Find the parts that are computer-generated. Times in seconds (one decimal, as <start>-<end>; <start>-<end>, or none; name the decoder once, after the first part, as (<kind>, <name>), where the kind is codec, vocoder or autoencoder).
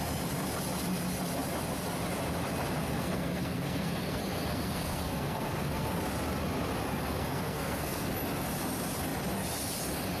2.8-6.0 (codec, SNAC); 6.9-8.1